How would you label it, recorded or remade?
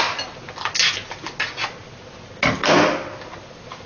recorded